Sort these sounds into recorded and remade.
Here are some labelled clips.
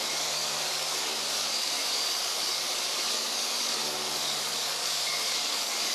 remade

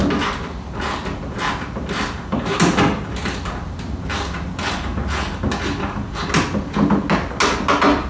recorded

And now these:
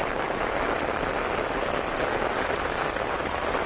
recorded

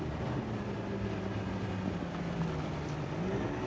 recorded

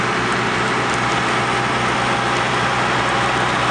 recorded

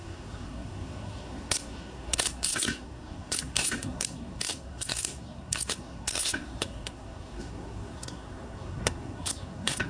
remade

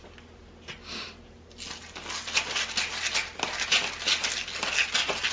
recorded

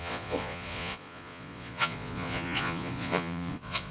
remade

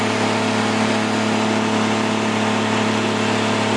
recorded